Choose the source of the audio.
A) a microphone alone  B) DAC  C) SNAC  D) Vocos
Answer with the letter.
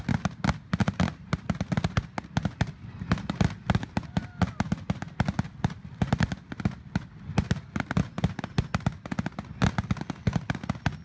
A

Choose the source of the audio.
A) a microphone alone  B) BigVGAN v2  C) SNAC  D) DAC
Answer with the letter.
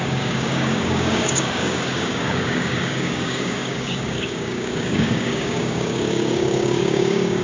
D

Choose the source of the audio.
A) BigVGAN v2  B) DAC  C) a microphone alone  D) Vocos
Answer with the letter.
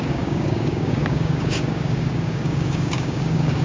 B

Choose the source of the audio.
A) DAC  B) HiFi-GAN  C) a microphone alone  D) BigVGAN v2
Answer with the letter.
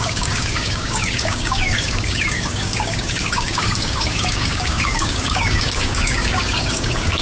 A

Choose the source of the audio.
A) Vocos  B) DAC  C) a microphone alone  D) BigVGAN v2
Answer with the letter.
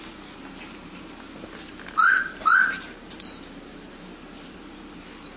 C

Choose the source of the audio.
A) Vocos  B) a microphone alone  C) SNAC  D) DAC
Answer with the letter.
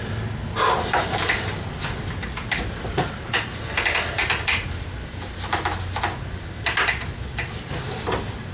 B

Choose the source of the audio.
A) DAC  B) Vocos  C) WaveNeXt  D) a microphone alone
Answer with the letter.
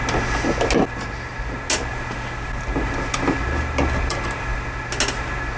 D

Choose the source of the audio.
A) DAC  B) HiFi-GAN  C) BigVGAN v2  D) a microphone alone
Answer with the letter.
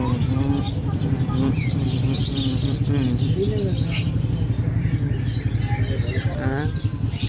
D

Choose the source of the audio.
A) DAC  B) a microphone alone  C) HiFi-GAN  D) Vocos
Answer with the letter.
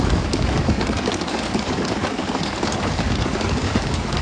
A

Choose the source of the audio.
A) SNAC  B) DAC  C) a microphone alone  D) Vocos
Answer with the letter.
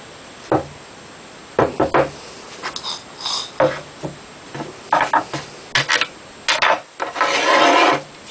C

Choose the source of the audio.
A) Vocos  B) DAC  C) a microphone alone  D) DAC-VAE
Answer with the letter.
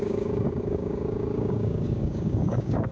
B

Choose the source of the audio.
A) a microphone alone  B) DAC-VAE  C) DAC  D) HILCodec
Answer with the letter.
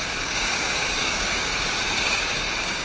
C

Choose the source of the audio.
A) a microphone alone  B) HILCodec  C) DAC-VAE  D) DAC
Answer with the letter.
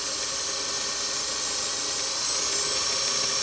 A